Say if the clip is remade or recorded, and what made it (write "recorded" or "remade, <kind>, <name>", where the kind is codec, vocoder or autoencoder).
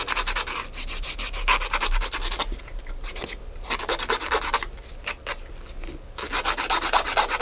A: recorded